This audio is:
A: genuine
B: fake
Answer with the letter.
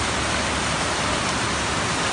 A